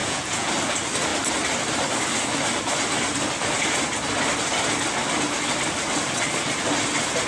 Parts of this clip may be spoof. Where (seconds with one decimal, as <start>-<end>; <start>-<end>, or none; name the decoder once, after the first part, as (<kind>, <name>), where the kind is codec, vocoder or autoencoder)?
0.0-0.5 (vocoder, Vocos)